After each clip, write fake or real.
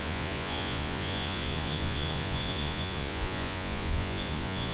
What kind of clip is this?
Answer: fake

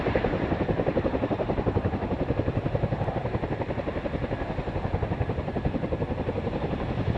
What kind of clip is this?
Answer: fake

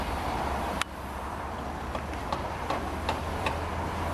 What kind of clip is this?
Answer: fake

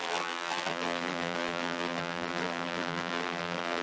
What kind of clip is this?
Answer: fake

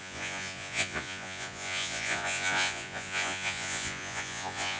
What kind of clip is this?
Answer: fake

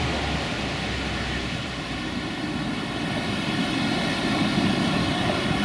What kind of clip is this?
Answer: real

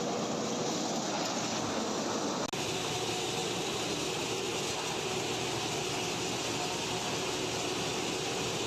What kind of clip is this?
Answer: real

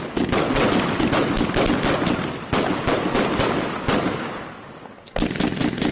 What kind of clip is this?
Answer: real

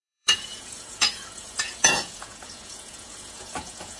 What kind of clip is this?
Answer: fake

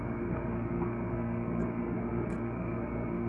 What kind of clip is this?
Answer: fake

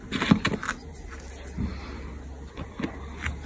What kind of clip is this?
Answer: real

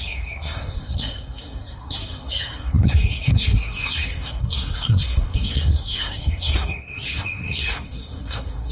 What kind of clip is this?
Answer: fake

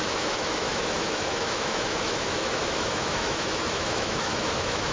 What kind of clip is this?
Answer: fake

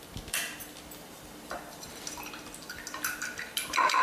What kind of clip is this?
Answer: real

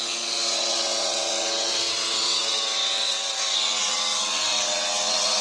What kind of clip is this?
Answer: fake